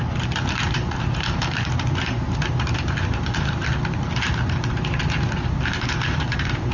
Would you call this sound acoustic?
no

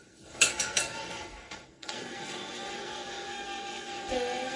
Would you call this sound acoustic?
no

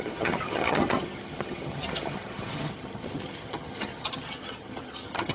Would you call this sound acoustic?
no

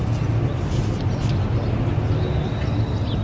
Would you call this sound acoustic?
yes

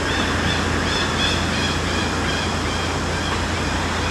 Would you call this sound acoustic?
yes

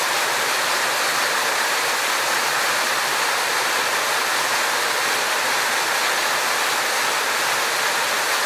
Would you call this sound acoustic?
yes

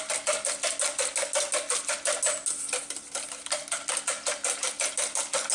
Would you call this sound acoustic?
yes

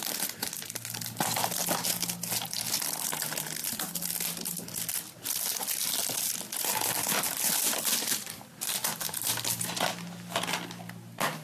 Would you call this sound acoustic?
yes